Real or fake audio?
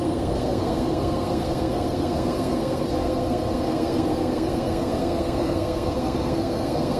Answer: fake